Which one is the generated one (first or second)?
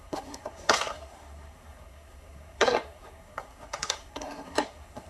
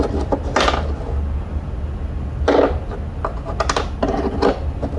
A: first